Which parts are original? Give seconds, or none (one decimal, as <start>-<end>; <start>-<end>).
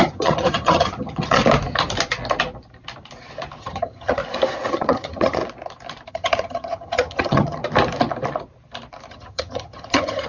1.4-3.6; 4.2-4.7; 5.4-6.1; 7.6-9.1